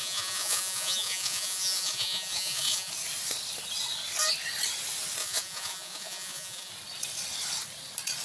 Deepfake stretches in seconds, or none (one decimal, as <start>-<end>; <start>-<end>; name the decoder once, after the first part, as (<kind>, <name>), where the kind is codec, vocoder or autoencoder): 0.0-2.9 (vocoder, Vocos); 5.2-6.7